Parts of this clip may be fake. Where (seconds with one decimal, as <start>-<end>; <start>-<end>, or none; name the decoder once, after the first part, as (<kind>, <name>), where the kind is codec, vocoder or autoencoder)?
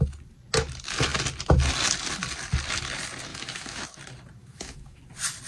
3.3-4.0 (autoencoder, DAC-VAE); 4.4-5.0